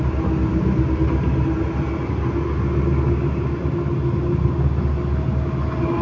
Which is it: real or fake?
real